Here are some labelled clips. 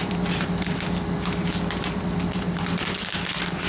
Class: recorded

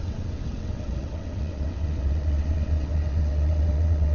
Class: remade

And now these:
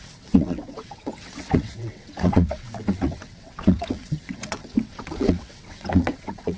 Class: remade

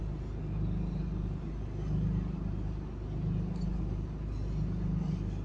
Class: recorded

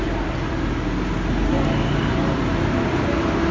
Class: recorded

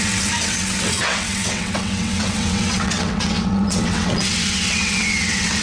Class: remade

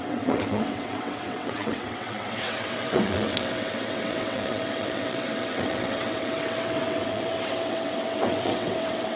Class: remade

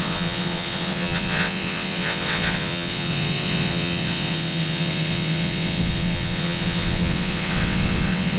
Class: remade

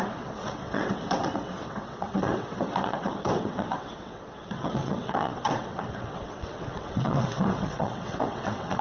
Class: remade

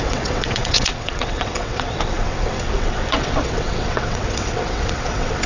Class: remade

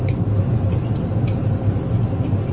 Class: recorded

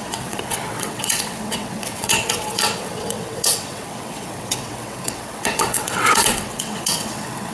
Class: remade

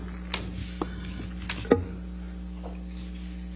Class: recorded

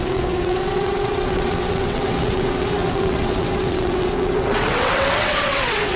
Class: remade